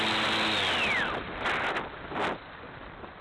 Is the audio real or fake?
real